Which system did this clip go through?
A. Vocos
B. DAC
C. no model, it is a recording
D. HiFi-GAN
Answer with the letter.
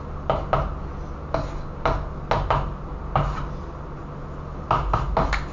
C